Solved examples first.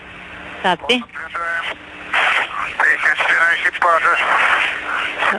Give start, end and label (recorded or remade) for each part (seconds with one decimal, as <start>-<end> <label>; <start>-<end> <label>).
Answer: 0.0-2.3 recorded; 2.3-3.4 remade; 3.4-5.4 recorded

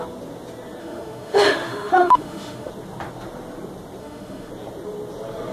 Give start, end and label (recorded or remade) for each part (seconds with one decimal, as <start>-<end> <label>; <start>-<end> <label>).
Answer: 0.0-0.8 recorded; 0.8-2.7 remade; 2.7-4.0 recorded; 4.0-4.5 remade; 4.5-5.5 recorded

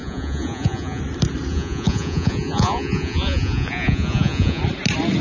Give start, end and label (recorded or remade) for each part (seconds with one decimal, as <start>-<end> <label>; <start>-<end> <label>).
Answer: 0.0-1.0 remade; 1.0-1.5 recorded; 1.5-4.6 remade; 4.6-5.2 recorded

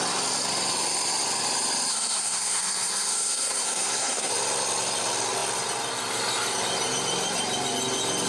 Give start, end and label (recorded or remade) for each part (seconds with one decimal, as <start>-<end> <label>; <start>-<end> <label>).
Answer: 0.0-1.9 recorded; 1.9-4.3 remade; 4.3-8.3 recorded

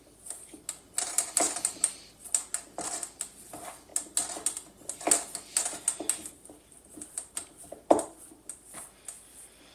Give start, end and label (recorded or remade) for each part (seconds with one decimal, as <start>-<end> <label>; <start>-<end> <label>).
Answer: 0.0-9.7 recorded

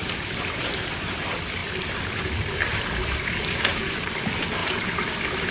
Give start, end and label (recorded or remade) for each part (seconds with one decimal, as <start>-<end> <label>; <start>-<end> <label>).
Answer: 0.0-3.0 recorded; 3.0-4.1 remade; 4.1-4.6 recorded; 4.6-5.5 remade

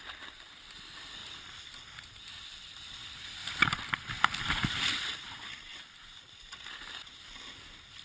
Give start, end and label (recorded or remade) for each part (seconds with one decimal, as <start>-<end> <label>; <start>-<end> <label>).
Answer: 0.0-8.0 recorded

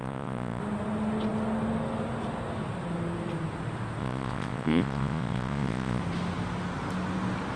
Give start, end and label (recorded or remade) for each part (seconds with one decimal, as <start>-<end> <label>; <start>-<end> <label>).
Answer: 0.0-0.6 remade; 0.6-4.0 recorded; 4.0-6.0 remade; 6.0-7.6 recorded